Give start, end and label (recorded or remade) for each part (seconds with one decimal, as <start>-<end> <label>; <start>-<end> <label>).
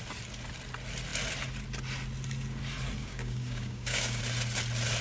0.0-3.0 recorded; 3.0-4.2 remade; 4.2-5.0 recorded